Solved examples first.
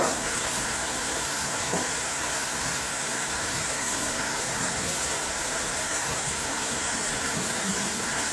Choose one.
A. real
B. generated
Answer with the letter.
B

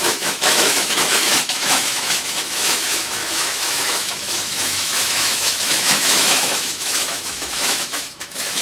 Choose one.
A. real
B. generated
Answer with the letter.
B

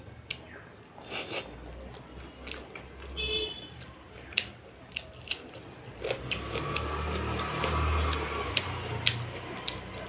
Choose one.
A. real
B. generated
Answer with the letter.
A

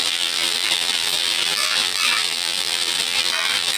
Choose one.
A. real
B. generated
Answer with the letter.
B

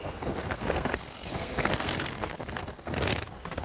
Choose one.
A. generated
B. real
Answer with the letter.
A